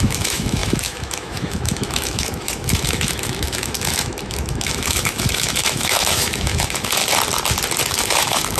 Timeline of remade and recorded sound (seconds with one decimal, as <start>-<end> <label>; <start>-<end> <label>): 0.0-7.0 remade; 7.0-7.9 recorded; 7.9-8.6 remade